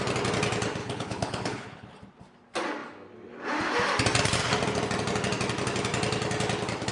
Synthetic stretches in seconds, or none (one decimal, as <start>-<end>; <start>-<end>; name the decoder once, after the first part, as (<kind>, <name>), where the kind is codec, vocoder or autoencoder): 0.8-1.9 (codec, HILCodec)